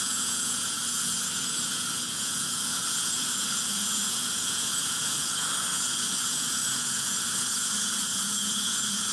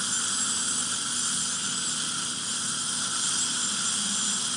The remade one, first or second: first